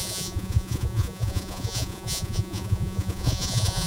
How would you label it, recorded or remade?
remade